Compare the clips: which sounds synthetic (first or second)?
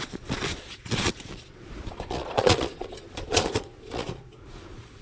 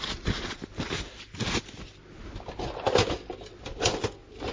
first